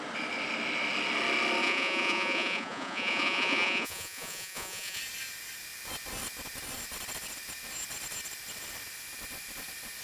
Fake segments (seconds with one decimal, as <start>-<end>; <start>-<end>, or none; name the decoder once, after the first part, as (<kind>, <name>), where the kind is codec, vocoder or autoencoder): 1.6-5.0 (vocoder, Vocos)